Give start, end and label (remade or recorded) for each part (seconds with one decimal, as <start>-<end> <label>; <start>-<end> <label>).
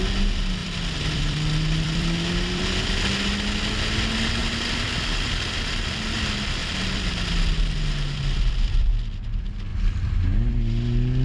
0.0-0.6 recorded; 0.6-2.6 remade; 2.6-4.4 recorded; 4.4-5.9 remade; 5.9-6.6 recorded; 6.6-8.9 remade; 8.9-11.2 recorded